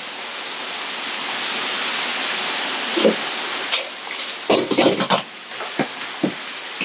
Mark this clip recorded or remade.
recorded